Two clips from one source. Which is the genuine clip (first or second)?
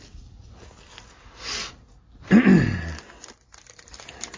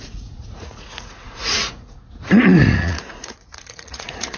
first